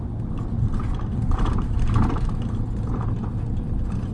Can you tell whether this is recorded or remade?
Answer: recorded